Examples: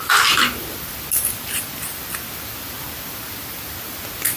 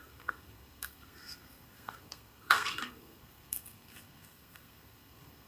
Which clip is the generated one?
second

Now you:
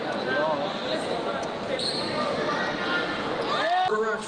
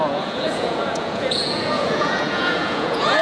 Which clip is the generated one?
second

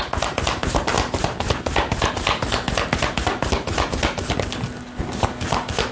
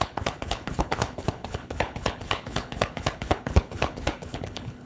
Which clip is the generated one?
second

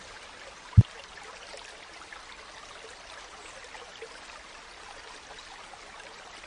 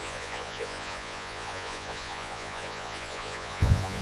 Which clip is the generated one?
second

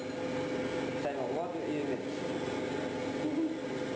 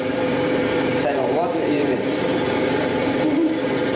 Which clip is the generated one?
second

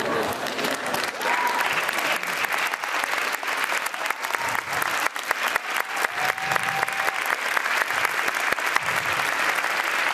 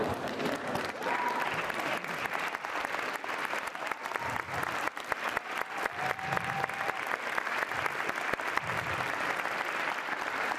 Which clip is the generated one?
second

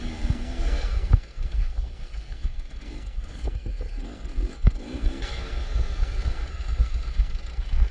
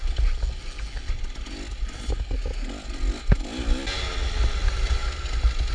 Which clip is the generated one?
first